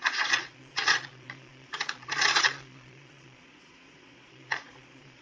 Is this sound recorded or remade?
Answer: remade